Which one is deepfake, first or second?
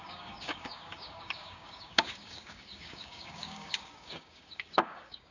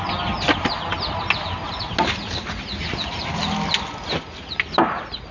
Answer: first